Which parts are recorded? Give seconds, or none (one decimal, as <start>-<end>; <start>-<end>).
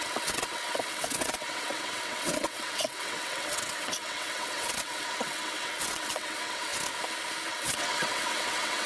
6.7-7.5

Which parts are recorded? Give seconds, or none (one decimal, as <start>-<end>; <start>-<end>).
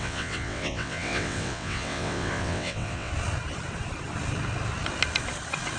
3.1-5.8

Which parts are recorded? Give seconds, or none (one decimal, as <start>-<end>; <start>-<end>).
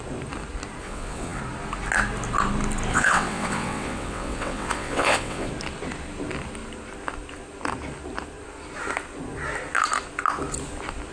0.0-0.8; 1.4-2.9; 5.5-11.1